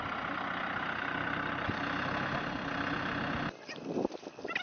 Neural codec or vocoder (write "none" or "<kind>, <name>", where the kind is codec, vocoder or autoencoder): none